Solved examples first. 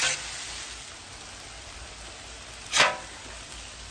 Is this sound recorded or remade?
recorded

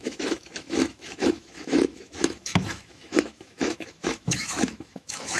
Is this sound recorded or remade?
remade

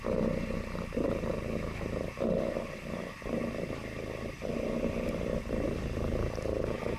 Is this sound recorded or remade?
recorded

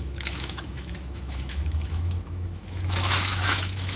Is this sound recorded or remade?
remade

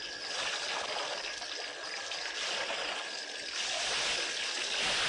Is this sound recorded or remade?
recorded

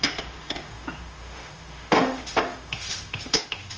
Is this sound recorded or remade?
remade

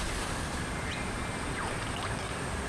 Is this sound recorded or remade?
recorded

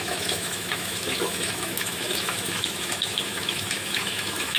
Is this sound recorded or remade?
remade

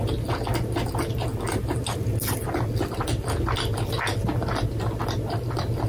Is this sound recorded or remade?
recorded